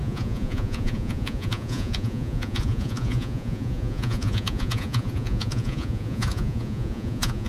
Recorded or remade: remade